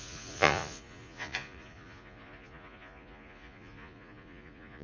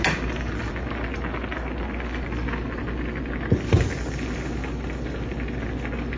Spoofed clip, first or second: first